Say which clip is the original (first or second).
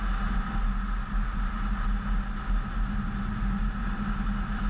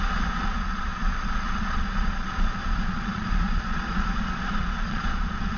first